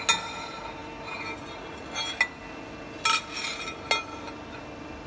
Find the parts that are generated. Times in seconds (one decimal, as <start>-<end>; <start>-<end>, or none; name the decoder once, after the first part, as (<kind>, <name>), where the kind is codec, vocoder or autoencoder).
none